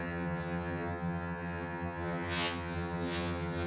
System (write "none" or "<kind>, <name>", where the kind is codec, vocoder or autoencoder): vocoder, HiFi-GAN